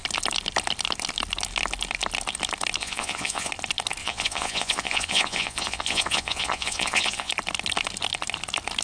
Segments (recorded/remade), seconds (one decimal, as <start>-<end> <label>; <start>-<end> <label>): 0.0-2.8 recorded; 2.8-3.5 remade; 3.5-4.0 recorded; 4.0-7.3 remade; 7.3-8.8 recorded